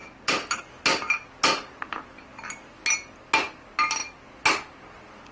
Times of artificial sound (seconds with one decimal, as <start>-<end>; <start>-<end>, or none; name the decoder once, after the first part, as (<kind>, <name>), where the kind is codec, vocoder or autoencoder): none